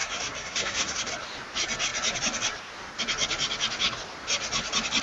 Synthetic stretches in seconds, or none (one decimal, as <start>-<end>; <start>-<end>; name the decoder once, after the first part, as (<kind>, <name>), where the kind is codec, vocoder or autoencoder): 0.0-1.1 (codec, SNAC)